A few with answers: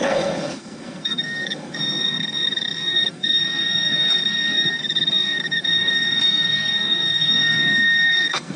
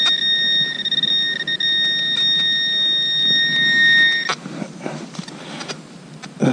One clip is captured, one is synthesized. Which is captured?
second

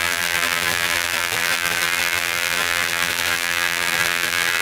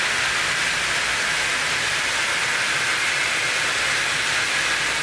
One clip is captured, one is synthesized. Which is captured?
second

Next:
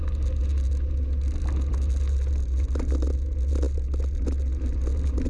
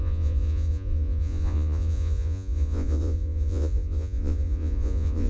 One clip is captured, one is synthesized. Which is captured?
first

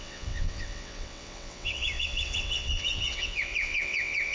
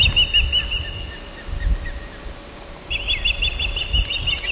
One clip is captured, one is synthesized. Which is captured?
second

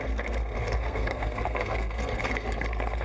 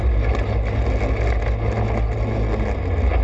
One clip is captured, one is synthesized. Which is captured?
second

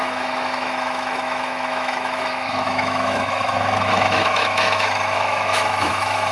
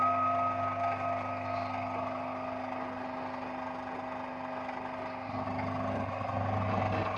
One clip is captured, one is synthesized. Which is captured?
second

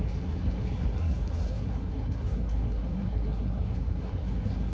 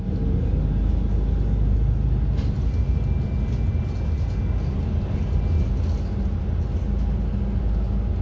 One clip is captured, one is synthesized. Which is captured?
second